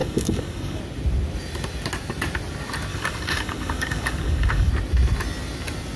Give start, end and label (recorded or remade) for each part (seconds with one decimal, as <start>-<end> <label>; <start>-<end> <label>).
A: 0.0-0.8 remade; 0.8-2.9 recorded; 2.9-4.7 remade; 4.7-6.0 recorded